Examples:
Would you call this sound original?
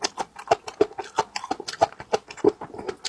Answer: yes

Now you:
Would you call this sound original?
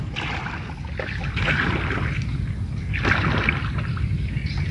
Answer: yes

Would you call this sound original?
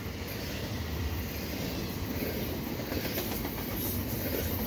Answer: yes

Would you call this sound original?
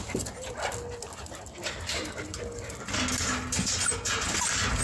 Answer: yes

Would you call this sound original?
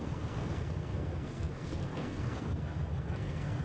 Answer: no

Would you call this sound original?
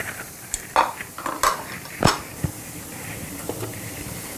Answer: no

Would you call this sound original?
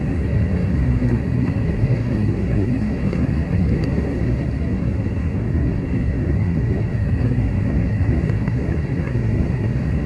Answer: no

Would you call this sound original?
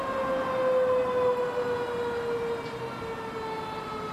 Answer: yes